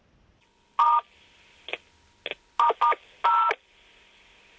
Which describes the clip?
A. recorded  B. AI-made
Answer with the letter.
A